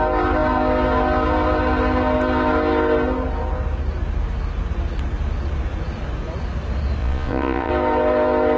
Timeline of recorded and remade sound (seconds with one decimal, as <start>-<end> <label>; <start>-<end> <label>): 0.0-7.0 recorded; 7.0-7.7 remade; 7.7-8.6 recorded